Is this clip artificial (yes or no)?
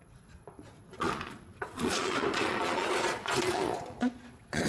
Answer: yes